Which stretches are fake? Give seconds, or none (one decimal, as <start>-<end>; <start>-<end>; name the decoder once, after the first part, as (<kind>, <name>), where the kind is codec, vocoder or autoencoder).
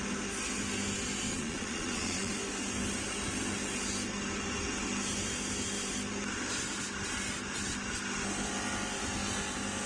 1.3-2.3 (vocoder, Vocos)